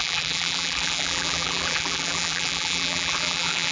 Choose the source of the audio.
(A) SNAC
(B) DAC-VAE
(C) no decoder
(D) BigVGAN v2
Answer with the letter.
D